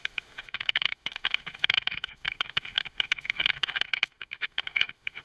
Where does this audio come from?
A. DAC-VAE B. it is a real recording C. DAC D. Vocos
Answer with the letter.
A